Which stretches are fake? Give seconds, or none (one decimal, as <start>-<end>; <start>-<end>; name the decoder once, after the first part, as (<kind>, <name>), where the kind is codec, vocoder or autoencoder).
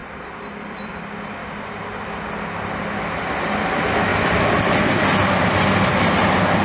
0.0-0.9 (vocoder, BigVGAN v2)